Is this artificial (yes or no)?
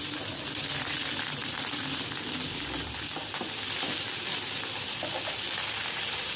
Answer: no